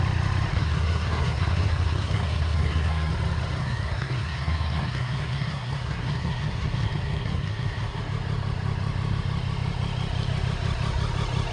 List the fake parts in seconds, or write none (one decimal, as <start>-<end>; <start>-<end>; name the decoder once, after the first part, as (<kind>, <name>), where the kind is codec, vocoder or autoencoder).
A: 0.5-3.1 (codec, SNAC); 3.6-8.0